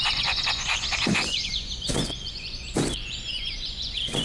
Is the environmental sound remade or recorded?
remade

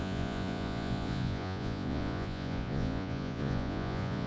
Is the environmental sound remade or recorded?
remade